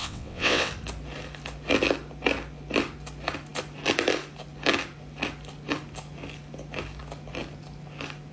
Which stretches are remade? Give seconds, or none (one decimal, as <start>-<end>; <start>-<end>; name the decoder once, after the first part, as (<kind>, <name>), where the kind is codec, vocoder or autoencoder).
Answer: 0.0-0.7 (vocoder, WaveNeXt)